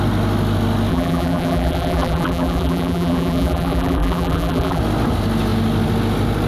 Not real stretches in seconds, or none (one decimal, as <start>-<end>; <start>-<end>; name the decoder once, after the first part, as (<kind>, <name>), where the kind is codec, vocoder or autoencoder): 0.9-4.8 (vocoder, BigVGAN v2)